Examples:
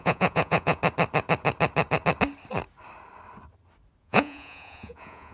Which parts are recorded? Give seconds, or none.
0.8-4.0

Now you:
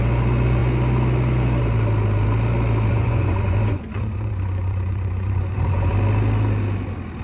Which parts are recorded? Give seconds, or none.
0.0-2.9; 5.9-7.2